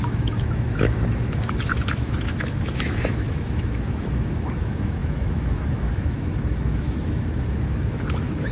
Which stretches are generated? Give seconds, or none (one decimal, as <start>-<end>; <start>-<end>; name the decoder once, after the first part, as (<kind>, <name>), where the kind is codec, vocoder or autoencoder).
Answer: 0.0-8.5 (autoencoder, DAC-VAE)

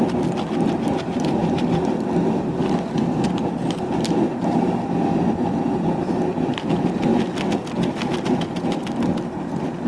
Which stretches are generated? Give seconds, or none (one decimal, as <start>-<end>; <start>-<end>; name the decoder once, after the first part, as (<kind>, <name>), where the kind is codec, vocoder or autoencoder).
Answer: 0.0-7.1 (vocoder, BigVGAN v2); 8.2-9.9

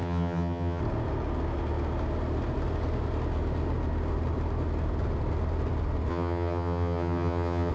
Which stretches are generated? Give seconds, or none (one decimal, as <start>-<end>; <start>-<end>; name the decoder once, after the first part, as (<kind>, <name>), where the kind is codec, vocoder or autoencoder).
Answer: 0.0-0.8 (vocoder, HiFi-GAN); 6.1-7.7

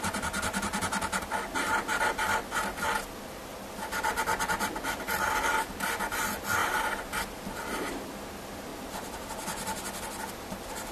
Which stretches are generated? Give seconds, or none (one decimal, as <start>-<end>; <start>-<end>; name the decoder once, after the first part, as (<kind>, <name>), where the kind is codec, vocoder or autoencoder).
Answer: none

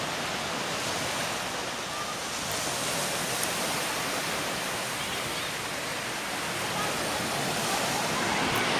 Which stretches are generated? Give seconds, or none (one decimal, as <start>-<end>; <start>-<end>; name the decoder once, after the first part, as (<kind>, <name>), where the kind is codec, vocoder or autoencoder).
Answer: none

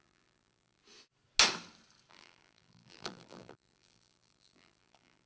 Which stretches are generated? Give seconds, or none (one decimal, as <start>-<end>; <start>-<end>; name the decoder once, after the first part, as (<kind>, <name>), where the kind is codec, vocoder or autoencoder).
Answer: 0.0-0.8 (vocoder, BigVGAN v2); 2.1-5.3